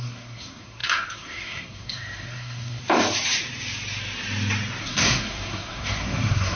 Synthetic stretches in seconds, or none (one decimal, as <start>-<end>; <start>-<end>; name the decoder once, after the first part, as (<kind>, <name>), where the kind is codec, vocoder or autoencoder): 0.0-2.8 (codec, SNAC); 4.8-6.6

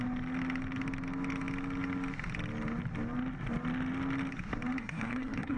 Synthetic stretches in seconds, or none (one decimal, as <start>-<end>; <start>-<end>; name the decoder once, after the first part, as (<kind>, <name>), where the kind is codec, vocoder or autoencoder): 4.8-5.6 (codec, SNAC)

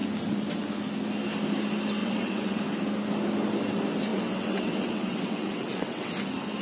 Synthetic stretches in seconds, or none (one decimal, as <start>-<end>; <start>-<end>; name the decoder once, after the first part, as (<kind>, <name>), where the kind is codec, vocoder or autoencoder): 2.0-2.6 (vocoder, WaveNeXt); 4.1-6.1

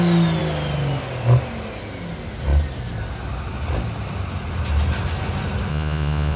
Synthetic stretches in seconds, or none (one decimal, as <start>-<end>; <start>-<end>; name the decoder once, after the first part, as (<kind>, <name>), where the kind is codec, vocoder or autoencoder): 5.7-6.4 (vocoder, Vocos)

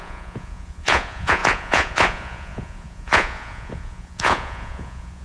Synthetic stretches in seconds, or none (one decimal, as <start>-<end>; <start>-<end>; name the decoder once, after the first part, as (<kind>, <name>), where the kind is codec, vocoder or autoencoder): 0.0-5.2 (vocoder, Vocos)

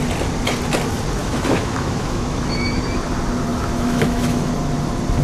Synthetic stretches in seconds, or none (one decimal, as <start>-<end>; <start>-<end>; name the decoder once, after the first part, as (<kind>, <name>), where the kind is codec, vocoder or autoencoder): 1.2-2.8 (autoencoder, DAC-VAE); 3.5-4.5

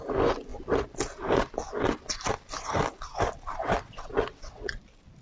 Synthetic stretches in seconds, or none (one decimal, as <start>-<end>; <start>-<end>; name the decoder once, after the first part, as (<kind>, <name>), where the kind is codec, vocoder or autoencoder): 3.6-4.8 (vocoder, WaveNeXt)

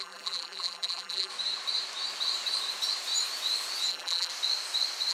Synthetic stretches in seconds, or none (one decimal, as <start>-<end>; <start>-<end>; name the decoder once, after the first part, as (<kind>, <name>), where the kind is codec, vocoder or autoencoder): 0.0-1.3 (vocoder, BigVGAN v2); 3.9-4.3